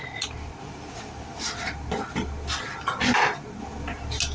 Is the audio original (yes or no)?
yes